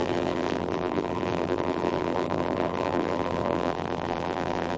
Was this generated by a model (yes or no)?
yes